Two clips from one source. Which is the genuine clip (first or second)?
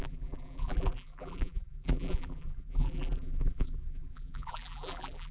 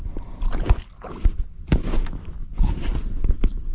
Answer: second